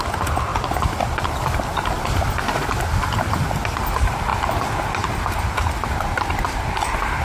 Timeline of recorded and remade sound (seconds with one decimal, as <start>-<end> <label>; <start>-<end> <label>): 0.0-7.2 recorded